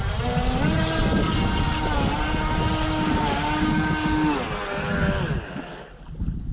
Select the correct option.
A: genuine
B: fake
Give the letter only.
A